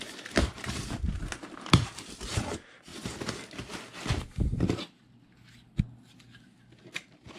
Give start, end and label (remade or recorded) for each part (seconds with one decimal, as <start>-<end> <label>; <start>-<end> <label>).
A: 0.0-2.9 remade; 2.9-7.4 recorded